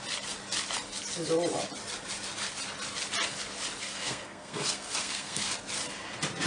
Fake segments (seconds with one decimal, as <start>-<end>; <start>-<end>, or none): 3.8-5.5